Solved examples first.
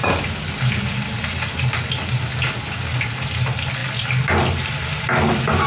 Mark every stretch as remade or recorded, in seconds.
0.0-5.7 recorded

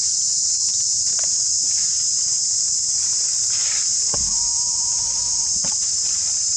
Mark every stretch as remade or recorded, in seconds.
0.0-0.7 recorded; 0.7-2.1 remade; 2.1-3.6 recorded; 3.6-6.6 remade

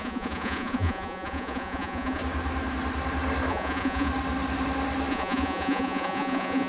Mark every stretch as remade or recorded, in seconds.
0.0-2.2 remade; 2.2-3.5 recorded; 3.5-4.1 remade; 4.1-5.1 recorded; 5.1-6.7 remade

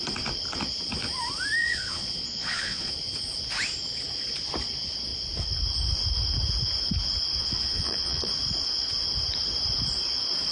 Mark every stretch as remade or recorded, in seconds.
0.0-1.6 recorded; 1.6-2.9 remade; 2.9-7.4 recorded; 7.4-8.3 remade; 8.3-10.5 recorded